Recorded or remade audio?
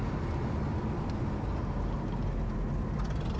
recorded